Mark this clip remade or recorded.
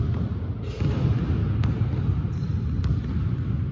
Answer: recorded